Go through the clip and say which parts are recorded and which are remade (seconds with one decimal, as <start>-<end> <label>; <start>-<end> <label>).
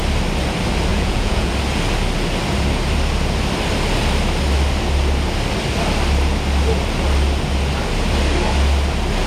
0.0-0.9 recorded; 0.9-1.5 remade; 1.5-9.3 recorded